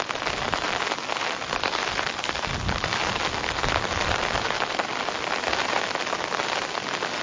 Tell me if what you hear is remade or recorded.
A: recorded